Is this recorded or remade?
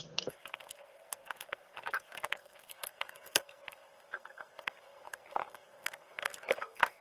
remade